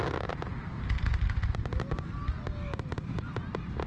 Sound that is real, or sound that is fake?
real